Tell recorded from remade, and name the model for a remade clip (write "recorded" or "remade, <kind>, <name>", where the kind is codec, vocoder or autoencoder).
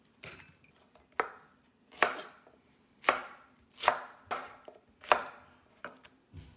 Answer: recorded